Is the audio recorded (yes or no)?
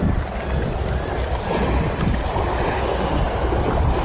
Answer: yes